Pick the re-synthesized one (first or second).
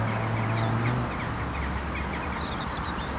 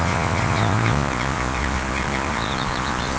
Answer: second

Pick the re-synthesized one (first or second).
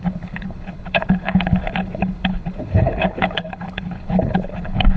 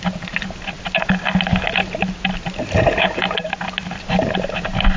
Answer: first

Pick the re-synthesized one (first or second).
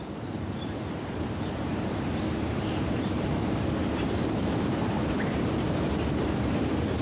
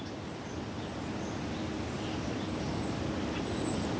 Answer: first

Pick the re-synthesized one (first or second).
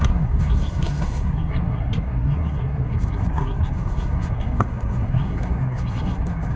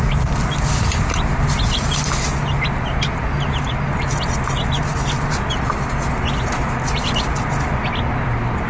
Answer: first